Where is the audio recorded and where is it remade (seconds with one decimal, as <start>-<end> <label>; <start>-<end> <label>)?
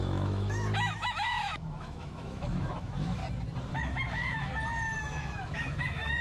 0.0-3.2 remade; 3.2-3.7 recorded; 3.7-4.5 remade; 4.5-5.0 recorded; 5.0-6.2 remade